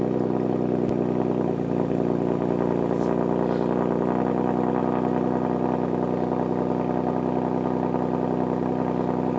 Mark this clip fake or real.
real